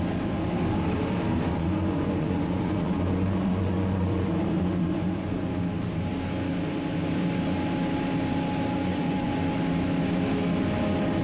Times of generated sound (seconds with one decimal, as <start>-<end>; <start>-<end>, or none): 1.5-5.5; 8.8-9.4